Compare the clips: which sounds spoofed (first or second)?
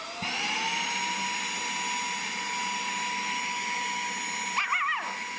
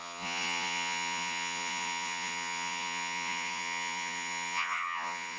second